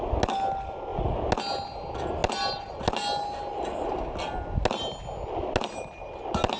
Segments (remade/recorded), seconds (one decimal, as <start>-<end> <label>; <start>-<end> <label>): 0.0-6.6 recorded